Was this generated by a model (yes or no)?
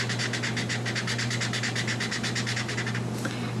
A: no